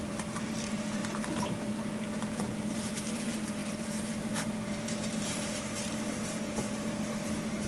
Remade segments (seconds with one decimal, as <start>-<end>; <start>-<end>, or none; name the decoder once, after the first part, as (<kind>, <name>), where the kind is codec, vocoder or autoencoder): 0.0-1.0 (vocoder, BigVGAN v2); 2.7-7.7